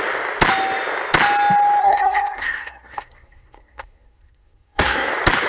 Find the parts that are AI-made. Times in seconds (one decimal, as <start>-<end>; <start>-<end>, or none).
1.8-5.1